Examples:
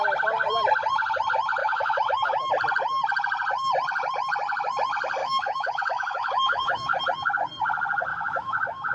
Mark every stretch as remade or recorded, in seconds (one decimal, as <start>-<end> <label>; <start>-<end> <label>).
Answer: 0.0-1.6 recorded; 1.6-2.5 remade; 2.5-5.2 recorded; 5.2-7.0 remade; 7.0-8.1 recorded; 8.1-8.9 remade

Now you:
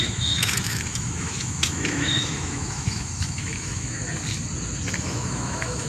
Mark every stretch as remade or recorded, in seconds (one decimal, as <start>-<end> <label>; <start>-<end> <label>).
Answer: 0.0-4.0 remade; 4.0-5.0 recorded; 5.0-5.9 remade

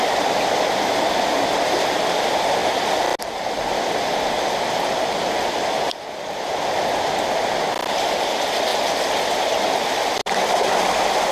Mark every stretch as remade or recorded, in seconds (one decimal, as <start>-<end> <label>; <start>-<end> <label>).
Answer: 0.0-11.3 recorded

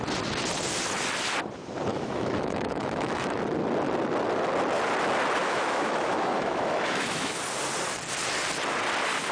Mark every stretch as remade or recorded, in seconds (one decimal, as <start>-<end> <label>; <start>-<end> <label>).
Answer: 0.0-1.9 recorded; 1.9-3.4 remade; 3.4-5.4 recorded; 5.4-7.4 remade; 7.4-9.3 recorded

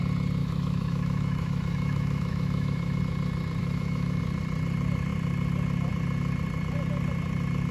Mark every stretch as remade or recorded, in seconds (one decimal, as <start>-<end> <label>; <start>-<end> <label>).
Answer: 0.0-0.4 recorded; 0.4-3.0 remade; 3.0-3.6 recorded; 3.6-4.2 remade; 4.2-7.7 recorded

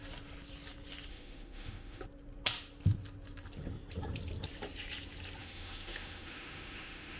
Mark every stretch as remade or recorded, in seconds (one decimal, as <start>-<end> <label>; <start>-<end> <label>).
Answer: 0.0-1.1 recorded; 1.1-2.0 remade; 2.0-5.4 recorded; 5.4-7.2 remade